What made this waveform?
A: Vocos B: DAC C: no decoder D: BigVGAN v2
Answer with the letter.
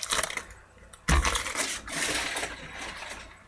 C